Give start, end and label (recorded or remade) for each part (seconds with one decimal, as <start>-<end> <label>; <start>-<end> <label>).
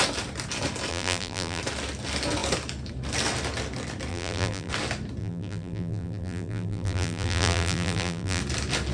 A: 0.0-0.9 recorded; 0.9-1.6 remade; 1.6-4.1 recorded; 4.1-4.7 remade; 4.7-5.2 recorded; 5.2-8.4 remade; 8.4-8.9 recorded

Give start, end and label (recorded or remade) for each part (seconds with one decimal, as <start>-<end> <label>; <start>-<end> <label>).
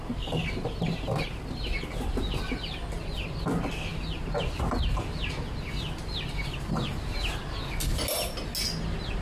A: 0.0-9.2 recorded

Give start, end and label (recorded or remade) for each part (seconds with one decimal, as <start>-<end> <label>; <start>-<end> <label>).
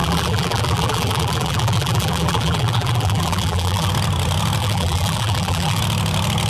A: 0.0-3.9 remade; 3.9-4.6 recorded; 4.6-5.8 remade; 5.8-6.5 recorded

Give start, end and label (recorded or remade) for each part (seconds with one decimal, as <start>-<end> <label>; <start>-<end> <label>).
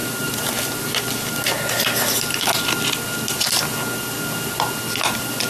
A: 0.0-1.0 remade; 1.0-5.5 recorded